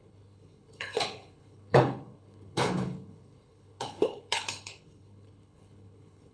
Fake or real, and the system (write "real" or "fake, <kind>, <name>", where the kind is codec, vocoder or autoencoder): fake, codec, HILCodec